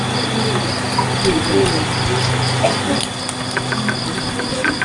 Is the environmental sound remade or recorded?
recorded